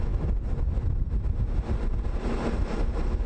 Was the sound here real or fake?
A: real